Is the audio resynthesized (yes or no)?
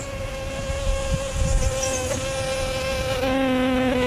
no